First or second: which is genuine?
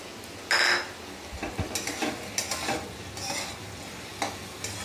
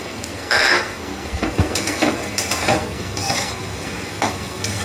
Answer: first